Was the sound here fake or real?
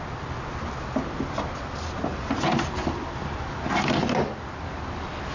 real